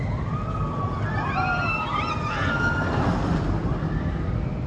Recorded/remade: recorded